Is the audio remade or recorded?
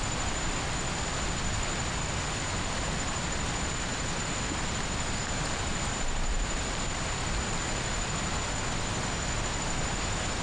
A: recorded